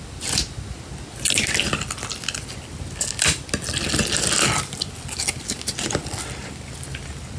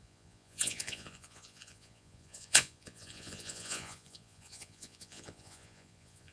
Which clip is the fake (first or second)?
second